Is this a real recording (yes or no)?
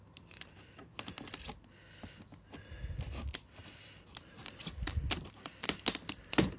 yes